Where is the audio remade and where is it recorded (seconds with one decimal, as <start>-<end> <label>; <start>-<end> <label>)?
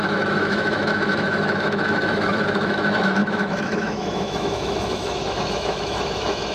0.0-6.5 remade